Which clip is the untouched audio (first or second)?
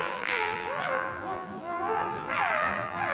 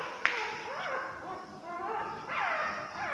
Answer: second